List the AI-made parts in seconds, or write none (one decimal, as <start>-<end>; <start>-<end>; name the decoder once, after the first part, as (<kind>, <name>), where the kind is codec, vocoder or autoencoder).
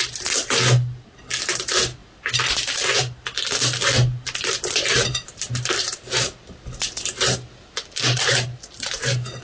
none